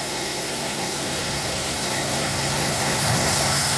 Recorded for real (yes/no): no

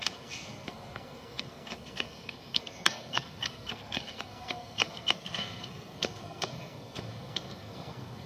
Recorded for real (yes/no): no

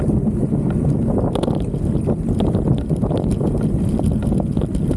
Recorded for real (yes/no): yes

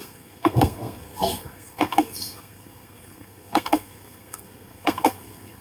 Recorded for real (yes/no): no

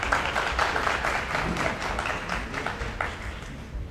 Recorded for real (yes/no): yes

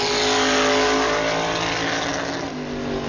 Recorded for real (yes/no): yes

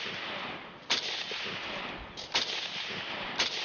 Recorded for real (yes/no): yes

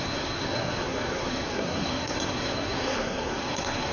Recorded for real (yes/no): no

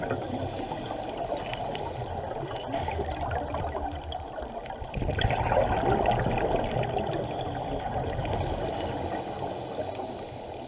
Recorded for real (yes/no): yes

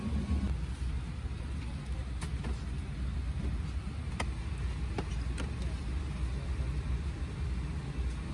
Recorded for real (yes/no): yes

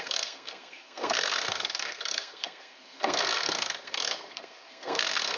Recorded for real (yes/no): no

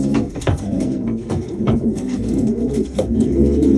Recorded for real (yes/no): no